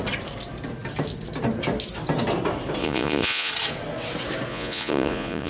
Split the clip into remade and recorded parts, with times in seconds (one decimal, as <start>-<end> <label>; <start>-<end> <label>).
0.0-2.8 recorded; 2.8-3.5 remade; 3.5-4.5 recorded; 4.5-5.5 remade

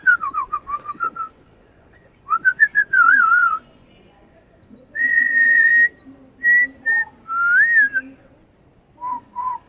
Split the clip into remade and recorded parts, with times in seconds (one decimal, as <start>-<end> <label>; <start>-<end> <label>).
0.0-5.7 remade; 5.7-9.1 recorded; 9.1-9.7 remade

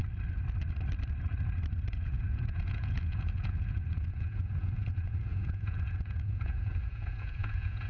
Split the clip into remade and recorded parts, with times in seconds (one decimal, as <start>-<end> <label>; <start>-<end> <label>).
0.0-1.9 recorded; 1.9-7.9 remade

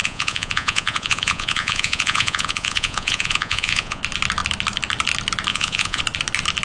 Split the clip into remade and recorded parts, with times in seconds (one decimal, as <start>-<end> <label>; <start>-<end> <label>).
0.0-4.0 remade; 4.0-5.5 recorded; 5.5-6.0 remade; 6.0-6.6 recorded